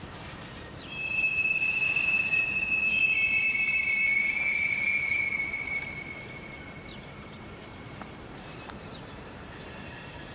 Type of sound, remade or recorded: remade